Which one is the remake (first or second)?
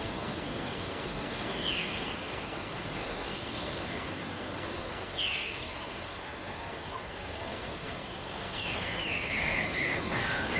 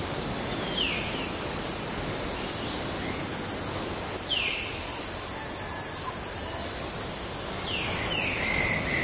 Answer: first